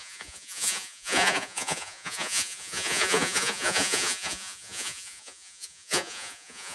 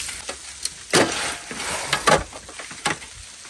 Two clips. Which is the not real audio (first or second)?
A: first